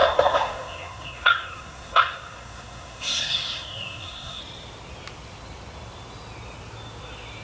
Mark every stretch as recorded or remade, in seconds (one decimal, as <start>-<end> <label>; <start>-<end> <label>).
0.0-4.4 remade; 4.4-7.4 recorded